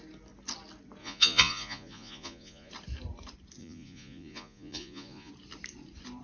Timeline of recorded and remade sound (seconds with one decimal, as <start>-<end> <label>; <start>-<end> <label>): 0.0-1.0 recorded; 1.0-2.7 remade; 2.7-3.6 recorded; 3.6-5.3 remade; 5.3-6.2 recorded